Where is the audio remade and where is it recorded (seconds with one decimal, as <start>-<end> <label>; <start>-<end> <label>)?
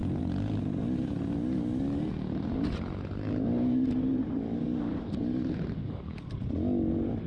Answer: 0.0-5.8 recorded; 5.8-6.3 remade; 6.3-7.3 recorded